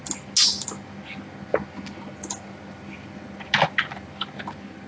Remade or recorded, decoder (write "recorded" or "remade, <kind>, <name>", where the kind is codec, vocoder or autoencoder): recorded